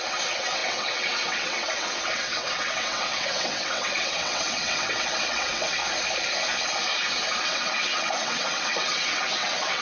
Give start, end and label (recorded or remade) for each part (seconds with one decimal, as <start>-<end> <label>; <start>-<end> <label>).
0.0-5.8 remade; 5.8-7.4 recorded; 7.4-9.8 remade